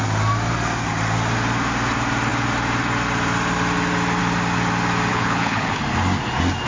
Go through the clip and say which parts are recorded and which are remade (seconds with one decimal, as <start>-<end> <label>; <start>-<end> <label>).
0.0-5.1 recorded; 5.1-5.8 remade; 5.8-6.7 recorded